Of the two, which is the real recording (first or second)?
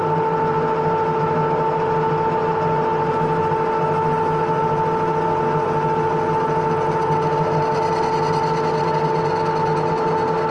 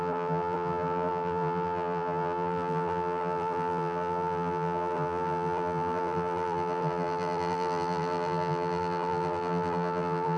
first